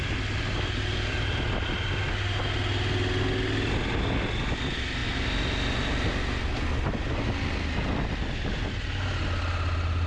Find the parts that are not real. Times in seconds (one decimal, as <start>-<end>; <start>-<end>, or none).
none

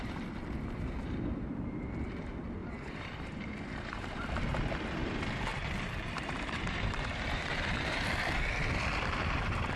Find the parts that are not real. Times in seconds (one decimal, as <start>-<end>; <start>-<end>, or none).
2.6-4.1; 5.5-8.3

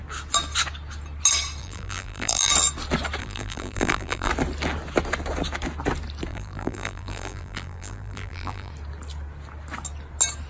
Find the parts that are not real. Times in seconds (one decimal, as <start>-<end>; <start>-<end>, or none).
1.6-2.5; 3.2-4.3; 6.3-8.7

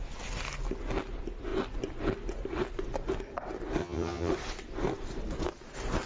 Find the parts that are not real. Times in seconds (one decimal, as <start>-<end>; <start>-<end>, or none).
3.8-4.3

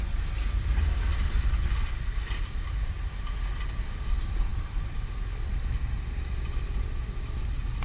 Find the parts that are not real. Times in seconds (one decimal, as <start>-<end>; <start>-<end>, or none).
none